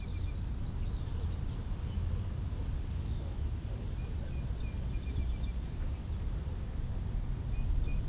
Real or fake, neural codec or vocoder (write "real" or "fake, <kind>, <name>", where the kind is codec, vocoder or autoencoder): real